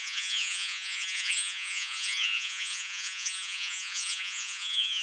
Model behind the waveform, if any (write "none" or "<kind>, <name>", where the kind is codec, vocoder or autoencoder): vocoder, Vocos